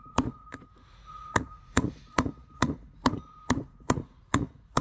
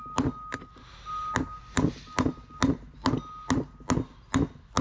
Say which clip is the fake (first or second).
first